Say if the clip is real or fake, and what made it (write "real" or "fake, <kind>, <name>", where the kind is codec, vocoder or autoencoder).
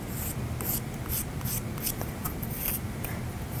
real